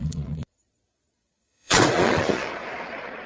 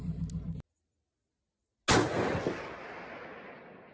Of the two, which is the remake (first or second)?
first